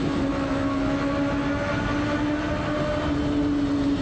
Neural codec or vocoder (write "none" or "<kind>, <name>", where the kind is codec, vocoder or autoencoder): none